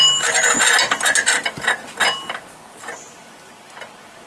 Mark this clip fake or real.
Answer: real